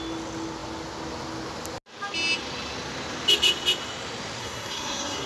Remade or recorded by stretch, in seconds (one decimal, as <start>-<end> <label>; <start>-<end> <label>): 0.0-4.4 recorded; 4.4-5.3 remade